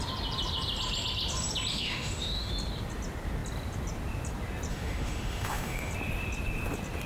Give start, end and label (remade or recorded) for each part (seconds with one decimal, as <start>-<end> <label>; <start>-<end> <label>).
0.0-1.7 recorded; 1.7-2.5 remade; 2.5-4.7 recorded; 4.7-5.9 remade; 5.9-7.1 recorded

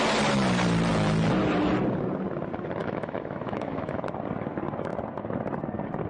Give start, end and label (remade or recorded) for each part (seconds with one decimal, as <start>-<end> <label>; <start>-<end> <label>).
0.0-2.8 recorded; 2.8-4.0 remade; 4.0-6.1 recorded